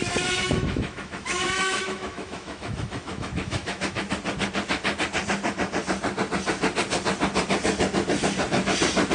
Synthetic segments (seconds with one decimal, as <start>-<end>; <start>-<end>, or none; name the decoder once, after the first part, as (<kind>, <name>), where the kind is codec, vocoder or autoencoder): 0.0-4.1 (autoencoder, DAC-VAE)